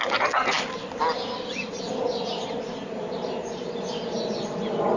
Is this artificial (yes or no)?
no